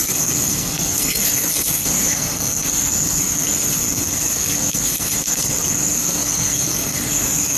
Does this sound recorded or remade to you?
remade